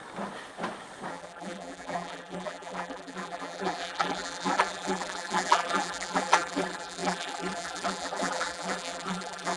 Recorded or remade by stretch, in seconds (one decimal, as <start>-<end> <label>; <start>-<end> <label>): 0.0-1.1 recorded; 1.1-9.6 remade